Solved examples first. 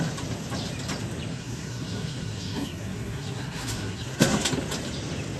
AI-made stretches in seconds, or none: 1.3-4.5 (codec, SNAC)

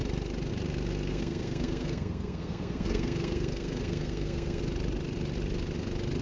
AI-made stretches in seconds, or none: 1.1-4.6 (codec, SNAC)

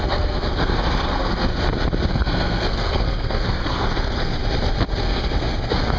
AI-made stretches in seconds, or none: 0.0-1.5 (codec, SNAC); 2.1-4.4; 5.0-6.0